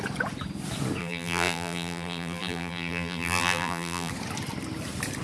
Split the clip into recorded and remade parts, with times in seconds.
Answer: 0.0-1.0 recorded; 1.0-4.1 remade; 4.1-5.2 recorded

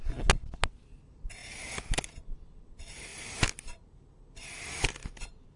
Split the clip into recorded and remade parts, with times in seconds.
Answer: 0.0-5.6 recorded

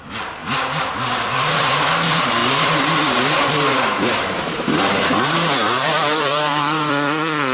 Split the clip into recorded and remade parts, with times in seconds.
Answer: 0.0-0.4 recorded; 0.4-1.6 remade; 1.6-2.4 recorded; 2.4-6.9 remade; 6.9-7.5 recorded

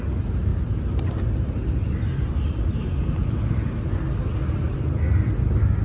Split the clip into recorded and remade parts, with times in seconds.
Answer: 0.0-3.2 recorded; 3.2-3.9 remade; 3.9-5.8 recorded

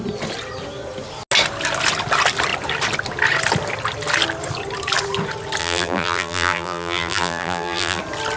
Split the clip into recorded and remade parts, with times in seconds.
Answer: 0.0-5.6 recorded; 5.6-8.0 remade; 8.0-8.4 recorded

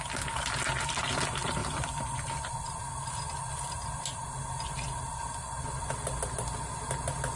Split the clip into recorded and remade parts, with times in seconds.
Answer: 0.0-7.4 recorded